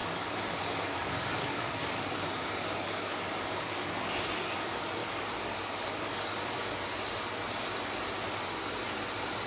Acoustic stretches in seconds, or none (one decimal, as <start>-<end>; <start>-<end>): 4.3-5.0; 6.8-9.5